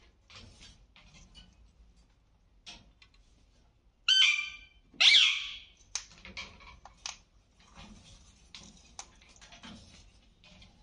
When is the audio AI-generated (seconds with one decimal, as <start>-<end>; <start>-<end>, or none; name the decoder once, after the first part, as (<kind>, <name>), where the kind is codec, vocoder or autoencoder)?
none